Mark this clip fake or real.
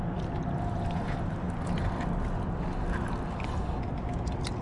real